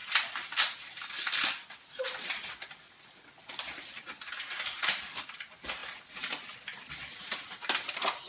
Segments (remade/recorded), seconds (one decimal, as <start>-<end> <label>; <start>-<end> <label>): 0.0-8.3 recorded